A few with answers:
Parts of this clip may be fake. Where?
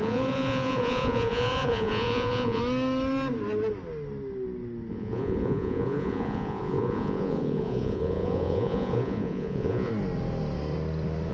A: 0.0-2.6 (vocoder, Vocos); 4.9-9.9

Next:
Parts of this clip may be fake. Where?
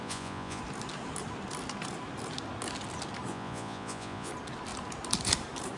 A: 0.0-0.6 (vocoder, Vocos); 3.3-4.3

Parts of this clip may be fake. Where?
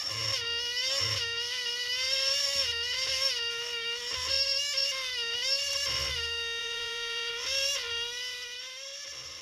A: 6.6-7.3 (vocoder, Vocos)